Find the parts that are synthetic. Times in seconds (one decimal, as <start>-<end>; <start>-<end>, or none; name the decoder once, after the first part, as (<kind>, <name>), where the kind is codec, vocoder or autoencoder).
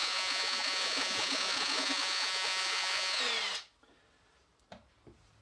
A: 0.0-3.2 (vocoder, Vocos)